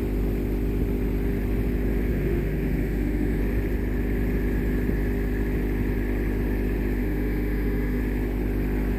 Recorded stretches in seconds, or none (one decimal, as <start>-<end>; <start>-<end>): 0.0-2.1; 3.4-7.0; 8.0-9.0